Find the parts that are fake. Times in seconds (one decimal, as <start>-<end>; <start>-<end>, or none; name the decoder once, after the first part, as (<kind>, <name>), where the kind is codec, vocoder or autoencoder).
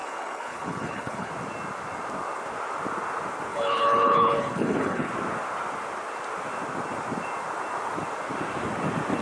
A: 0.0-1.3 (codec, HILCodec); 3.5-5.1